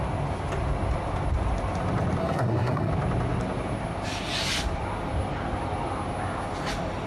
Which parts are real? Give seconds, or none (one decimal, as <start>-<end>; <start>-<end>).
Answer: 0.0-2.2; 2.9-7.1